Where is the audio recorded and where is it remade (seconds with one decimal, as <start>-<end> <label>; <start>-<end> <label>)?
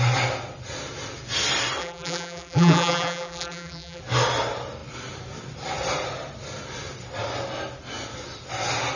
0.0-1.8 recorded; 1.8-4.0 remade; 4.0-9.0 recorded